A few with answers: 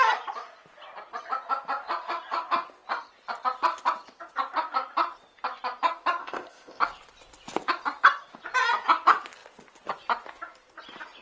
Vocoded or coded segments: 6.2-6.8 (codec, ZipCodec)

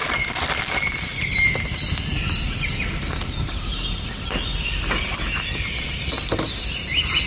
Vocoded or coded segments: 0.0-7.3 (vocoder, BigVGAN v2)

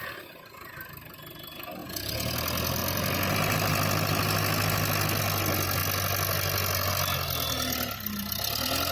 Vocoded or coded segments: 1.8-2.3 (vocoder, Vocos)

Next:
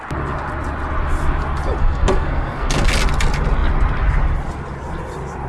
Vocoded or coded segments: 1.8-2.9 (codec, SNAC)

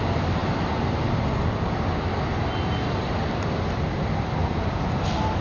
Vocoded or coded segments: none

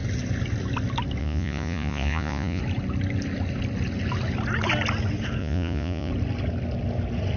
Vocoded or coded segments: 1.2-2.6 (vocoder, Vocos); 5.4-6.1